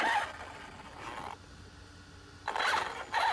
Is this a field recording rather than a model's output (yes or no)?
yes